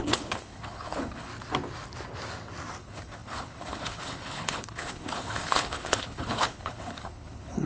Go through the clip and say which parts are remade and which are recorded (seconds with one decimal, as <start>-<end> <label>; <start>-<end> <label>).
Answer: 0.0-1.3 remade; 1.3-2.8 recorded; 2.8-7.7 remade